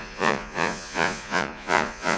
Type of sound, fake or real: fake